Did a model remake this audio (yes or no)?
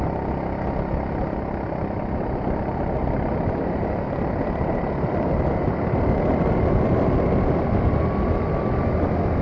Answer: no